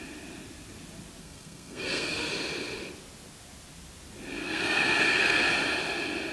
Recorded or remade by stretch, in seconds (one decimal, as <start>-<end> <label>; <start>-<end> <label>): 0.0-1.2 recorded; 1.2-2.3 remade; 2.3-4.4 recorded; 4.4-5.5 remade; 5.5-6.3 recorded